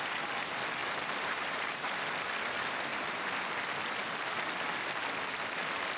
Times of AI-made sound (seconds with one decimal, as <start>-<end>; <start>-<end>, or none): 0.8-2.0; 2.9-3.4

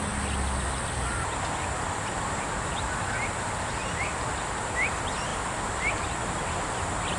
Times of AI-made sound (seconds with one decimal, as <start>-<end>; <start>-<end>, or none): none

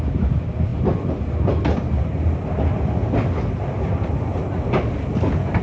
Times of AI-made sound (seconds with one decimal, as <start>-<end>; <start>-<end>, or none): 0.0-0.7; 1.9-3.0; 3.6-5.6

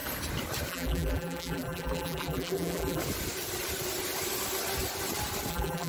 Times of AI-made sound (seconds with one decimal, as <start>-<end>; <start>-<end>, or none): 0.7-3.0; 5.5-5.9

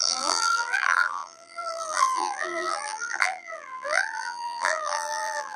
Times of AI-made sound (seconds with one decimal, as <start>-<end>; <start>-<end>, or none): 0.0-5.6

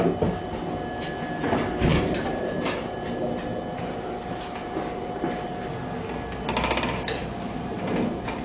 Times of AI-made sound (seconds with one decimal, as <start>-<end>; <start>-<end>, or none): 1.9-2.6; 7.2-7.9

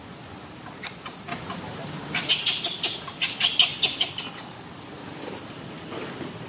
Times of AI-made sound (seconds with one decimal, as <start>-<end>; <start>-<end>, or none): 1.3-2.3; 5.0-6.5